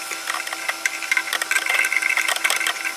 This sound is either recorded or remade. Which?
recorded